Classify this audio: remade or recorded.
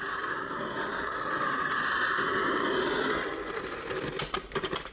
recorded